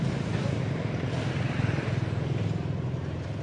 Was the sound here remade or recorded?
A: recorded